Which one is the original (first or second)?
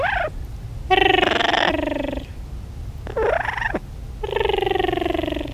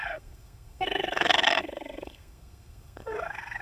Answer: first